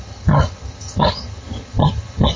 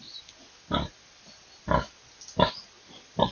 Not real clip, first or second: first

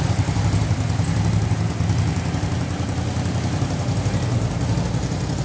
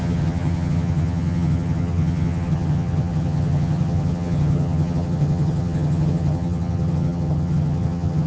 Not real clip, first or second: second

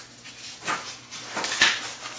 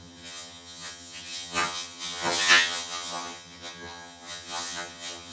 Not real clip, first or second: second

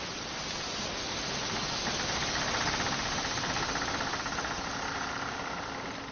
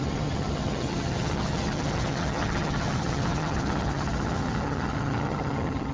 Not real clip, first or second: second